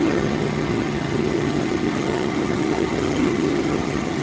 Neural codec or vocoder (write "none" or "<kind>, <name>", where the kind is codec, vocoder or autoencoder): vocoder, HiFi-GAN